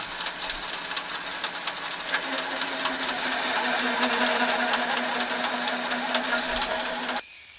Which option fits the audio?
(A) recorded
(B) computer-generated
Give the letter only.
A